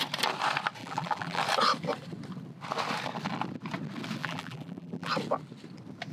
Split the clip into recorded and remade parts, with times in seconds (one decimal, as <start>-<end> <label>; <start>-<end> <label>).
0.0-0.8 recorded; 0.8-1.4 remade; 1.4-4.2 recorded; 4.2-5.1 remade; 5.1-6.1 recorded